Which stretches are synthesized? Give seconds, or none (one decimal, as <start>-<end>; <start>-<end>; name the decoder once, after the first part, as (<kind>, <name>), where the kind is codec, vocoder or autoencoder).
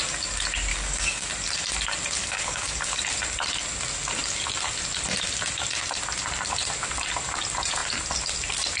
0.7-1.3 (codec, DAC); 2.2-3.0